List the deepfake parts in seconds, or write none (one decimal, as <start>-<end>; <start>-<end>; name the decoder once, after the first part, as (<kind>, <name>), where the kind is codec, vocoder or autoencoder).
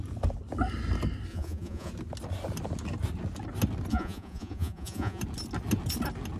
1.3-1.9 (vocoder, Vocos); 3.9-5.2